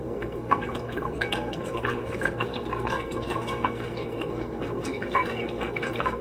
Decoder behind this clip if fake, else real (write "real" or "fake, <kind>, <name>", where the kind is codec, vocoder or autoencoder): fake, codec, SNAC